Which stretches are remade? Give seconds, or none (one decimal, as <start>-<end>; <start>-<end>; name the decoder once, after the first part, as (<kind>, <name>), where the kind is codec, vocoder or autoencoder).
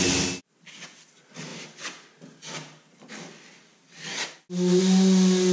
none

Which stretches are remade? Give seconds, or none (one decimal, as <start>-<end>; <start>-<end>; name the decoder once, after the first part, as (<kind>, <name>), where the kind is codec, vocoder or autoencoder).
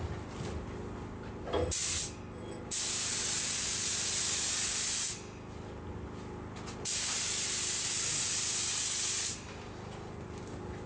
none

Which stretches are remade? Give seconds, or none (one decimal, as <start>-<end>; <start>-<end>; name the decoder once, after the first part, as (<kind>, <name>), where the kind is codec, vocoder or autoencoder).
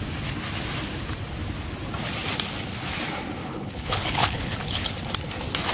3.4-4.9 (codec, HILCodec)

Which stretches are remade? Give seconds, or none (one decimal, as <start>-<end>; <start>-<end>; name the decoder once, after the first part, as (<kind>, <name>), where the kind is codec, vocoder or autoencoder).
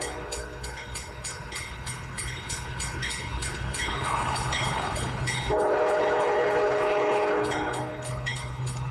0.0-8.9 (codec, HILCodec)